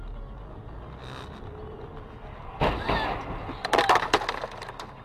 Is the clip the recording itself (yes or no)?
yes